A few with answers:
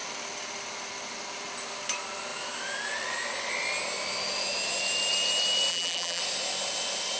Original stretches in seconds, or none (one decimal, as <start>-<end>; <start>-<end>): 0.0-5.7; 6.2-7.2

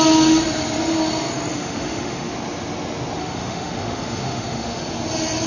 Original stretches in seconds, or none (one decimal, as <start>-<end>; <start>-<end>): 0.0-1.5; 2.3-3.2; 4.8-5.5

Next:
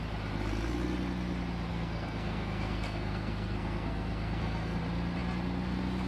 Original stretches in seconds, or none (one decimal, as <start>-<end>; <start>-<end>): 0.0-1.7; 4.8-6.1

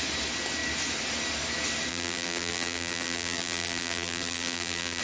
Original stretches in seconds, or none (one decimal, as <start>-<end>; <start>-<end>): 0.0-1.9